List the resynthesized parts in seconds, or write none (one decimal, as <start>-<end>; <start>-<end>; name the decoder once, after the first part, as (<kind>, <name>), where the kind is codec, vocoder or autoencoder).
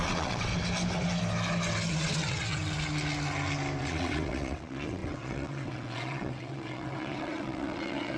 0.0-0.5 (vocoder, WaveNeXt); 1.9-2.6; 3.8-8.2